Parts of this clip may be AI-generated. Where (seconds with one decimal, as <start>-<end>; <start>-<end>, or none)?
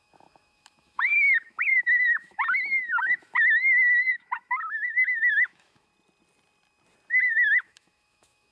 0.0-5.9; 7.2-8.5